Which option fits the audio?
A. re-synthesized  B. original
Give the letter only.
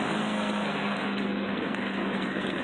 A